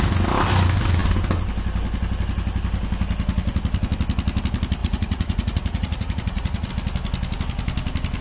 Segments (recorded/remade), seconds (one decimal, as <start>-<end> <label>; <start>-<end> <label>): 0.0-4.8 recorded; 4.8-6.7 remade; 6.7-8.2 recorded